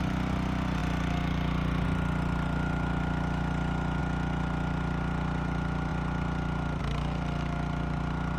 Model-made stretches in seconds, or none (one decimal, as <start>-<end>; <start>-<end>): none